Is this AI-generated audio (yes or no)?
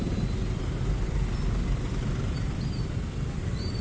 no